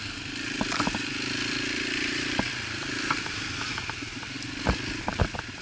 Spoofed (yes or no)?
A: yes